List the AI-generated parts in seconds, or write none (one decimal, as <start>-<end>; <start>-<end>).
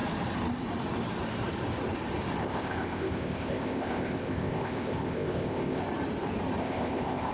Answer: 2.4-5.8; 6.6-7.3